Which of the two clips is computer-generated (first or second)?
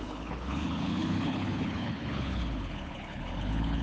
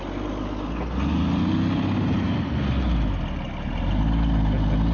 first